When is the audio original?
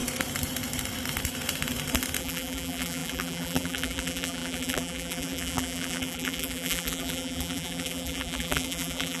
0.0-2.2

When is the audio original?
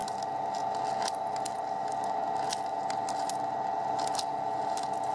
0.0-5.1